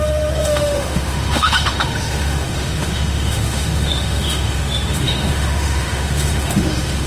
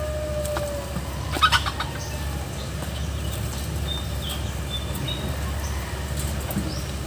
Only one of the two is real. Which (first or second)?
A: second